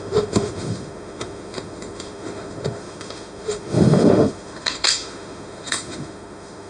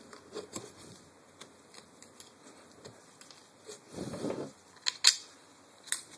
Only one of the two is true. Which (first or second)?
second